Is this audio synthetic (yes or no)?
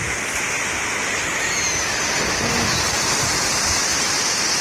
no